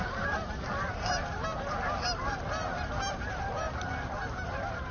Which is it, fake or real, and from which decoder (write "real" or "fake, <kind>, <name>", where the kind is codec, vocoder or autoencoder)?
fake, vocoder, BigVGAN v2